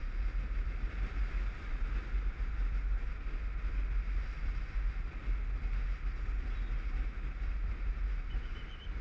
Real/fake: real